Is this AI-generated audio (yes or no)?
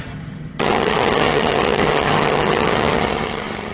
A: yes